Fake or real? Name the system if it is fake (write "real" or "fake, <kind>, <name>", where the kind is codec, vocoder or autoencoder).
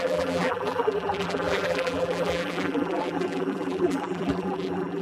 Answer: fake, vocoder, BigVGAN v2